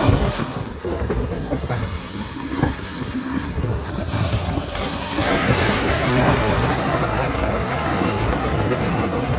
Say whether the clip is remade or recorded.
remade